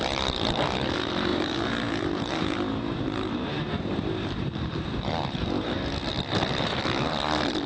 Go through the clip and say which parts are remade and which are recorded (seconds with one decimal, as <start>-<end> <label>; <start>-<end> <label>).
0.0-1.3 recorded; 1.3-5.9 remade; 5.9-7.7 recorded